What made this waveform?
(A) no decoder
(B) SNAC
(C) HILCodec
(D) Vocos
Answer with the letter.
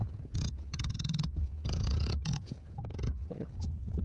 D